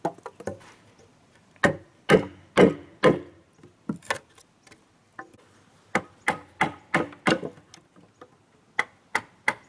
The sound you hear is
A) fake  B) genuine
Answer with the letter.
B